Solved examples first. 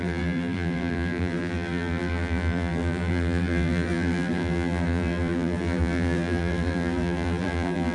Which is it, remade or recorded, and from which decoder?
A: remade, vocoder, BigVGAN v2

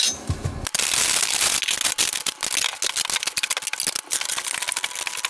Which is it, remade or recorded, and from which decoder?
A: recorded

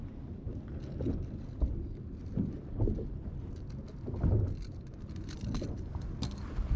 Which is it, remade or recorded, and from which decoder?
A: recorded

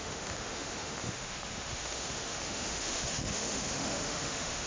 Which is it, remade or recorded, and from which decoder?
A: remade, autoencoder, DAC-VAE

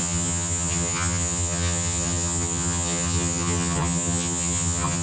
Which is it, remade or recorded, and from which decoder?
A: remade, vocoder, HiFi-GAN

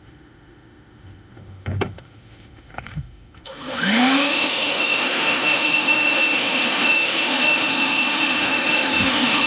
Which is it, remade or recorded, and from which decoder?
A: remade, autoencoder, DAC-VAE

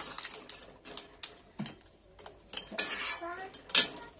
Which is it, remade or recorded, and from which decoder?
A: recorded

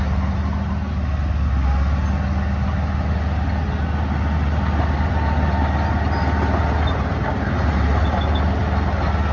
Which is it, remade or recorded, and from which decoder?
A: recorded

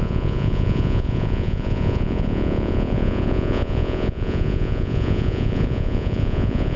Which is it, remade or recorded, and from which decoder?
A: remade, vocoder, Vocos